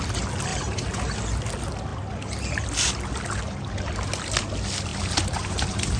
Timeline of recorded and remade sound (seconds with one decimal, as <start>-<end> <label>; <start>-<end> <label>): 0.0-0.5 recorded; 0.5-1.0 remade; 1.0-4.9 recorded; 4.9-6.0 remade

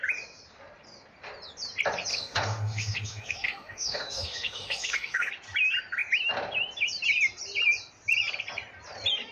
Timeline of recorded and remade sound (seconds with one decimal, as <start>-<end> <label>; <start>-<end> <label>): 0.0-2.1 recorded; 2.1-5.3 remade; 5.3-9.3 recorded

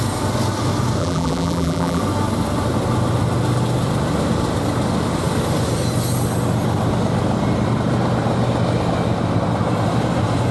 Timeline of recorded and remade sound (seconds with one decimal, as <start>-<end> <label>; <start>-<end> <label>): 0.0-1.0 recorded; 1.0-2.0 remade; 2.0-10.5 recorded

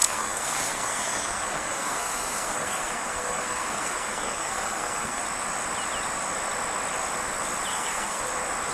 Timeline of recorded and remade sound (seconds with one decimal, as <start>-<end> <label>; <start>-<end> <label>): 0.0-5.2 remade; 5.2-7.7 recorded; 7.7-8.2 remade; 8.2-8.7 recorded